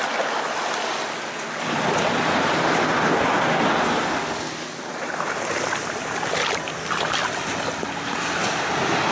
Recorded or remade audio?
recorded